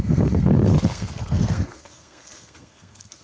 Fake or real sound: fake